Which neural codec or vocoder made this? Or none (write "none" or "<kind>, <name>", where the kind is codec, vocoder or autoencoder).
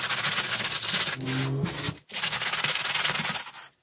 none